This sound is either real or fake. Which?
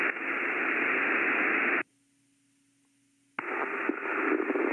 real